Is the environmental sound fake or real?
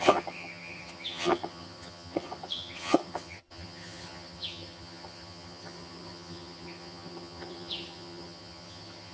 fake